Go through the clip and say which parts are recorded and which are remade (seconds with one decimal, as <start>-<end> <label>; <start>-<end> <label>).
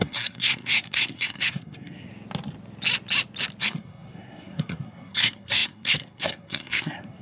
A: 0.0-2.1 remade; 2.1-3.6 recorded; 3.6-7.2 remade